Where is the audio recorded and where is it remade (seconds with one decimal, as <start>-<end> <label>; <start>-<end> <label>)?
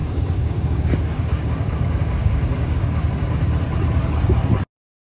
0.0-3.1 remade; 3.1-5.2 recorded